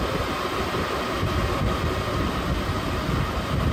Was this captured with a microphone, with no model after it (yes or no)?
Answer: yes